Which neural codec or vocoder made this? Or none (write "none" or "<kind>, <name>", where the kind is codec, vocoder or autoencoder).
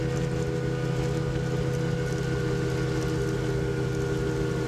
none